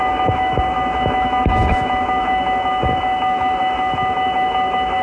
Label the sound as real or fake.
fake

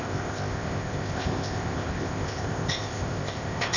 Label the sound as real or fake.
fake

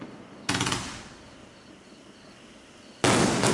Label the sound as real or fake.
real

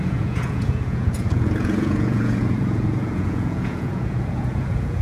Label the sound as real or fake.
fake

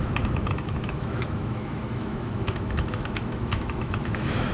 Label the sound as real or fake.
fake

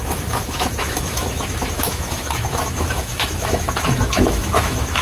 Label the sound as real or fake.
fake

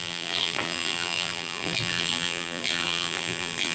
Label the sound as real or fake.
fake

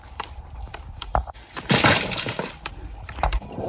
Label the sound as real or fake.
fake